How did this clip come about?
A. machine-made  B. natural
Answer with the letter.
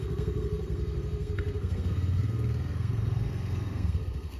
A